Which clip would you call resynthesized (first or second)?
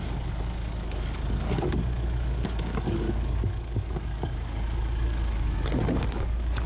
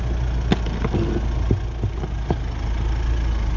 first